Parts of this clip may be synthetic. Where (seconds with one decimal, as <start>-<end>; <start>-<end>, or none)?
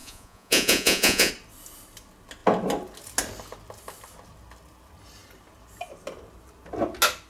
0.0-1.3